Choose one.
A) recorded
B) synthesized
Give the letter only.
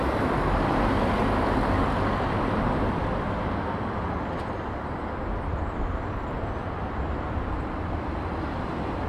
A